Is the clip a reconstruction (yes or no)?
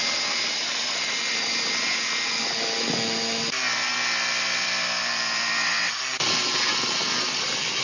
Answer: no